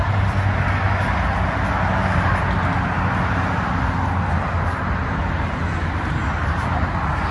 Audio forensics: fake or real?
real